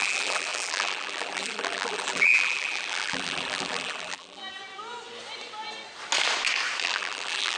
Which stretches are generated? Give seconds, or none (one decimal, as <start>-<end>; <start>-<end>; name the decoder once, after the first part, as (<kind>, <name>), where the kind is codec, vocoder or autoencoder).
0.0-4.4 (vocoder, BigVGAN v2); 6.8-7.6